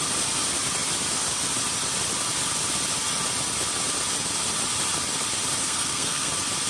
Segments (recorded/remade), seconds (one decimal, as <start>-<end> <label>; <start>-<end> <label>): 0.0-5.6 recorded; 5.6-6.3 remade; 6.3-6.7 recorded